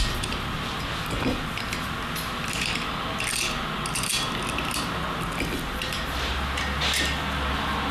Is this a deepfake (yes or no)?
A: no